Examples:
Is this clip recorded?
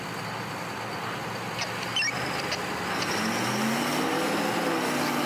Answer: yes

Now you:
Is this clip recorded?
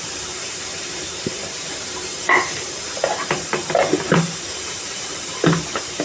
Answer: no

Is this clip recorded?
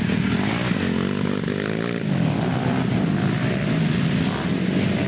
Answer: yes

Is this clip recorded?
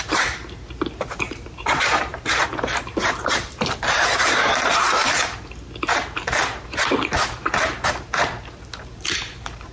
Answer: no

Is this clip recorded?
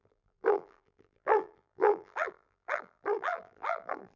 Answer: no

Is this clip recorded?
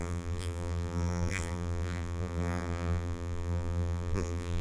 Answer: no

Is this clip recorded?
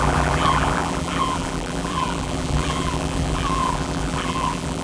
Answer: no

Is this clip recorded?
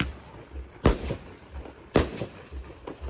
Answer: no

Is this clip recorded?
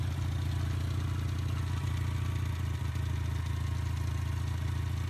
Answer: yes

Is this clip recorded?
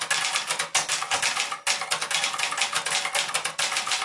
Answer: yes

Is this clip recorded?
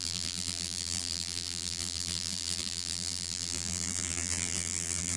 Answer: no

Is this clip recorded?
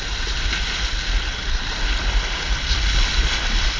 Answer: yes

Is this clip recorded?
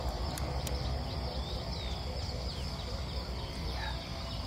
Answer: yes